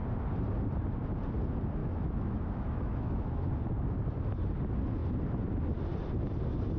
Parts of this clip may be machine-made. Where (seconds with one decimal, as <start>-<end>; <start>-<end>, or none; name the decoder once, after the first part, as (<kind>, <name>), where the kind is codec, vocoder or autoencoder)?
1.8-3.5 (autoencoder, DAC-VAE)